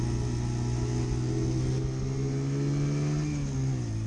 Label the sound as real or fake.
real